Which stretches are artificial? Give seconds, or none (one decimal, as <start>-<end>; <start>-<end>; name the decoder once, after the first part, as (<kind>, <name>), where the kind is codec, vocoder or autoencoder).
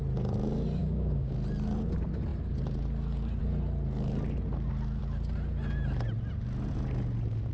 0.8-1.3 (codec, DAC)